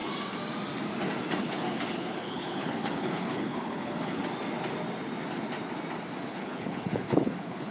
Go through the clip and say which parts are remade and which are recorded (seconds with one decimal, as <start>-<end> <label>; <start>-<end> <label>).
0.0-1.4 recorded; 1.4-4.2 remade; 4.2-6.3 recorded; 6.3-7.7 remade